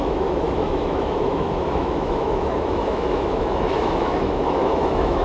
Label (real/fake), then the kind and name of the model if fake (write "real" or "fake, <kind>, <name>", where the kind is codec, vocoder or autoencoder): fake, autoencoder, DAC-VAE